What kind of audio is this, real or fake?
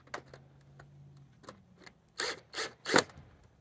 real